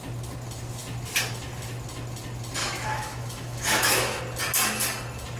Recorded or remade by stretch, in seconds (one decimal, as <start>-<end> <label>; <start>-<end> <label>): 0.0-2.6 recorded; 2.6-4.2 remade; 4.2-5.4 recorded